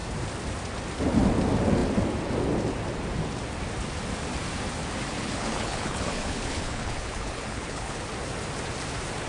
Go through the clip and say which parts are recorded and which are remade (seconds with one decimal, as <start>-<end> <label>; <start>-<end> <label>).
0.0-5.1 recorded; 5.1-8.1 remade; 8.1-9.3 recorded